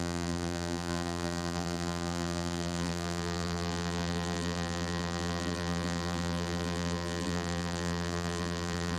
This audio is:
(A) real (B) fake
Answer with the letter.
B